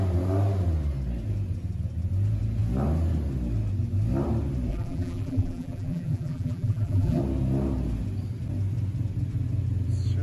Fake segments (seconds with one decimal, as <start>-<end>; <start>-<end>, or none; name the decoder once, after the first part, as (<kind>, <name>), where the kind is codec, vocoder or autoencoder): 4.7-7.2 (vocoder, BigVGAN v2)